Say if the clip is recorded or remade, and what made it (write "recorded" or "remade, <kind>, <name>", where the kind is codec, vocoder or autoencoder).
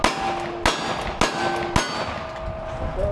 recorded